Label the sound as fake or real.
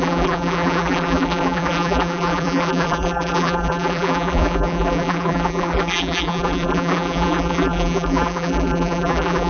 fake